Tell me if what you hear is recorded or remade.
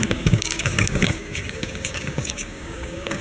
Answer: remade